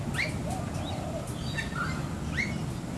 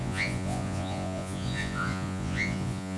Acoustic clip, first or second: first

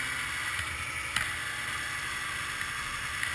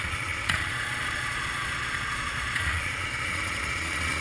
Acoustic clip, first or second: first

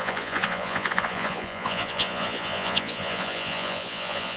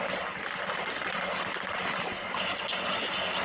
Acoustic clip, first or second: second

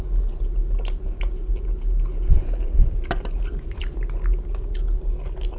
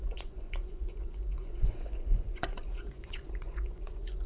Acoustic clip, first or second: first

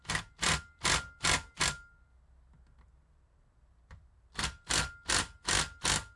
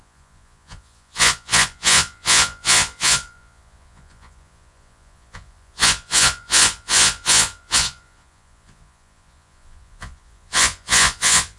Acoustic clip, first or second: first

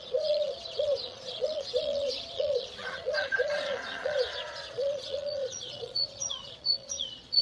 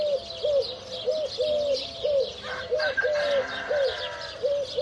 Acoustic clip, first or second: second